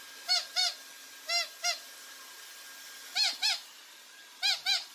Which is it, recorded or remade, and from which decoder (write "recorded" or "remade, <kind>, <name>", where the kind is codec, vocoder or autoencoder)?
recorded